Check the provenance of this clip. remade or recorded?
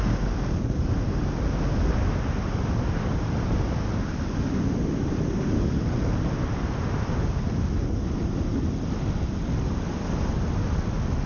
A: recorded